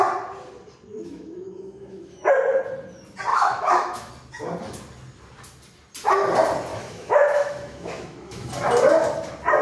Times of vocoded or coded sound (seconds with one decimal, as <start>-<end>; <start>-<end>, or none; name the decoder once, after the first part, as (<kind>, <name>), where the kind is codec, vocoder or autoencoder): 0.9-2.3 (autoencoder, DAC-VAE); 3.3-4.1; 6.7-8.5